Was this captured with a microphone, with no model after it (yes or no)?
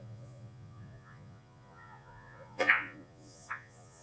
no